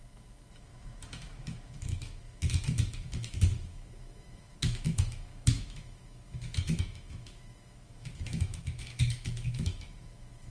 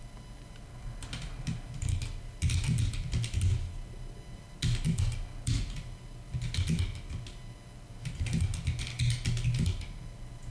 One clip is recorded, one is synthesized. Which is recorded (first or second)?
second